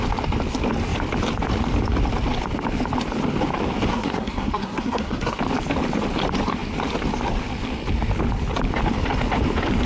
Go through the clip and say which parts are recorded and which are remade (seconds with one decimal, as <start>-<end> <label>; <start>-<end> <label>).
0.0-3.9 recorded; 3.9-5.4 remade; 5.4-9.9 recorded

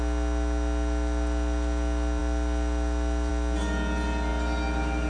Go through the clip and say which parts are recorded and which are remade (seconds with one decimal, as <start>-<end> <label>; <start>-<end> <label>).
0.0-5.1 recorded